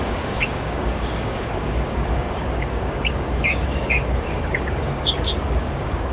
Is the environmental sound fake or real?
fake